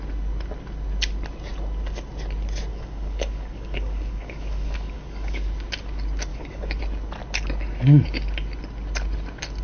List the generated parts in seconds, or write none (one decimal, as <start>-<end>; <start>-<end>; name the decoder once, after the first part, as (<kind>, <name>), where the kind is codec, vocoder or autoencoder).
2.7-5.5 (codec, DAC); 6.3-6.8